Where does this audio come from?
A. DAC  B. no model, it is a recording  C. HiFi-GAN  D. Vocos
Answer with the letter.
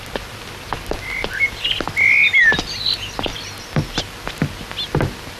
B